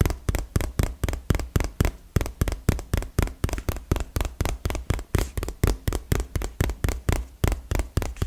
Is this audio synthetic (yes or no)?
no